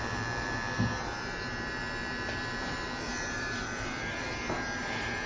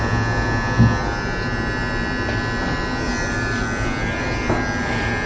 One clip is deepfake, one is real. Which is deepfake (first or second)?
first